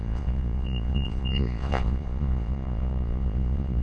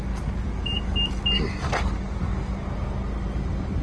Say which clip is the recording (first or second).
second